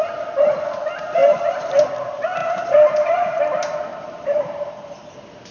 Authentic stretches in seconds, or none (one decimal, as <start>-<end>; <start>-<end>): 0.0-1.2; 1.8-2.4; 3.4-3.9; 5.0-5.5